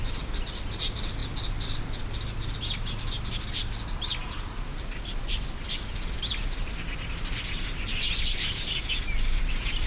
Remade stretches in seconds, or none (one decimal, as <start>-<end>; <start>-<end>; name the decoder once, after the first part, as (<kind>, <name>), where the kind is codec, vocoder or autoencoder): none